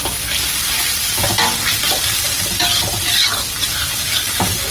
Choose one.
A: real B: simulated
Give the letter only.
A